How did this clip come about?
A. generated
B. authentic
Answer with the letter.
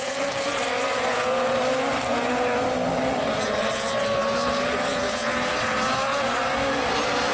B